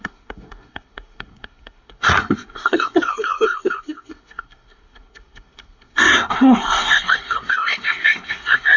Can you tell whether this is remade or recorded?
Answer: remade